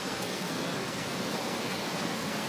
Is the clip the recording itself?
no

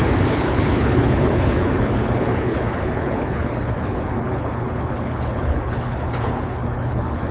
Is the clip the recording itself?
no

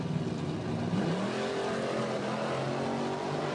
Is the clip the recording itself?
yes